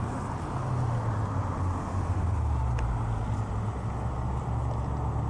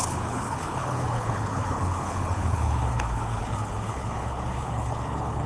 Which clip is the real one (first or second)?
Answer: first